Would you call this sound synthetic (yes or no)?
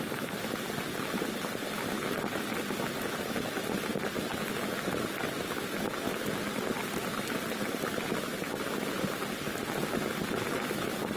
no